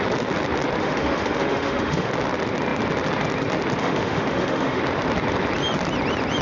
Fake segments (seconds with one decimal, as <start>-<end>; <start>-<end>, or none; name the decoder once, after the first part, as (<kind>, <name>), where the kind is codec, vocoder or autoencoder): 0.8-2.1 (autoencoder, DAC-VAE); 3.8-4.8